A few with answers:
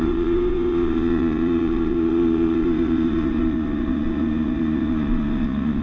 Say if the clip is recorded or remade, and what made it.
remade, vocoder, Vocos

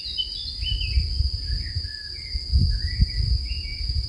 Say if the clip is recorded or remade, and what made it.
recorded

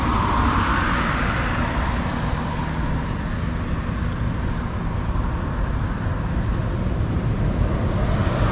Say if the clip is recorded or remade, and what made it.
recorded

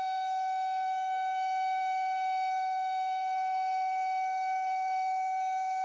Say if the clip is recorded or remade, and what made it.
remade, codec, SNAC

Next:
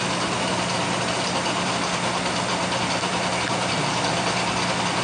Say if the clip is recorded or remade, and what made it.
recorded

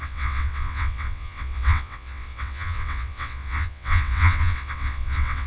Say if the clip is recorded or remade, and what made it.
remade, vocoder, WaveNeXt